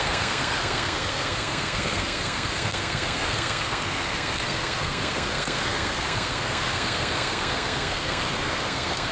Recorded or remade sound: remade